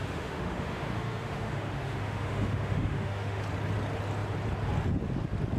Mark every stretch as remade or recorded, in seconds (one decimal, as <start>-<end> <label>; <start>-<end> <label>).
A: 0.0-3.4 remade; 3.4-5.6 recorded